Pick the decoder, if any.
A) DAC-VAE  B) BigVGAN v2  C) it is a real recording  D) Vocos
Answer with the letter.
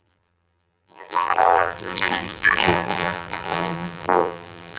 B